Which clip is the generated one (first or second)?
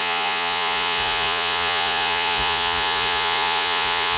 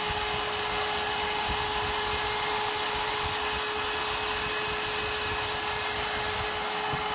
first